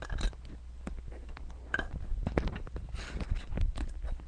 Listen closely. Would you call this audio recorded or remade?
recorded